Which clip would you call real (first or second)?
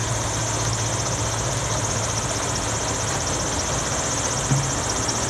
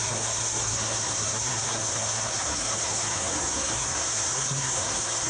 first